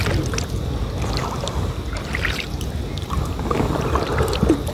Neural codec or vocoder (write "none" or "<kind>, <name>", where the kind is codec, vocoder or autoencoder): none